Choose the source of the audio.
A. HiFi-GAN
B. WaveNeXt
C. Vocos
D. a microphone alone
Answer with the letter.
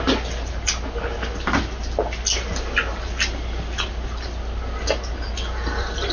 D